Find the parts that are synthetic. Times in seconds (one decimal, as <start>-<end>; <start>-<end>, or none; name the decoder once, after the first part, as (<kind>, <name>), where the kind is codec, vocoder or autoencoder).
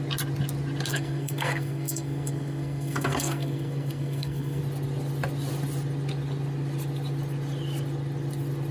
0.9-4.6 (codec, SNAC)